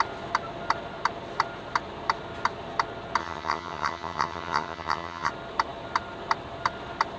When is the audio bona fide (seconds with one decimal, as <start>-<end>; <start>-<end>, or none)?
0.0-3.2; 5.3-7.2